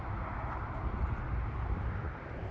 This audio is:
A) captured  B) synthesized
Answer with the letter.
A